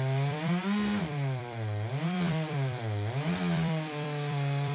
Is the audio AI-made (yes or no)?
yes